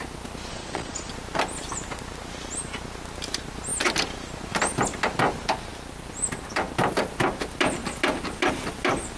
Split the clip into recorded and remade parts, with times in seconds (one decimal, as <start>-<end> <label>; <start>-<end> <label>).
0.0-0.5 recorded; 0.5-1.1 remade; 1.1-9.2 recorded